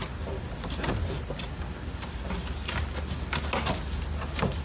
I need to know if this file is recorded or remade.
recorded